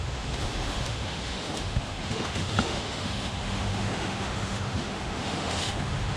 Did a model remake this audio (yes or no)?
yes